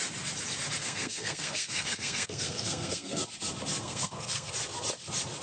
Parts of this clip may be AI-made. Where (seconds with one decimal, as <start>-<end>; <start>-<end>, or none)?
0.8-3.2; 3.8-4.5